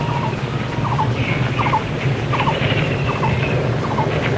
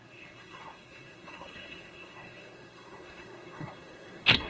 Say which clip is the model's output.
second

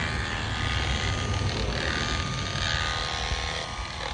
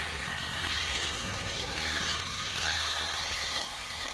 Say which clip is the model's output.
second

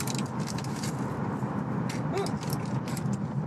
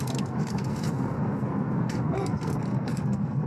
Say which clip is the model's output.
second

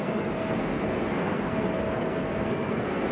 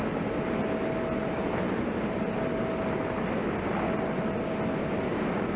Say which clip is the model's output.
first